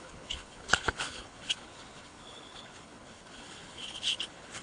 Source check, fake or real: fake